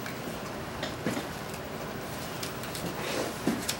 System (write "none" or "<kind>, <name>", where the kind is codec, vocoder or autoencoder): none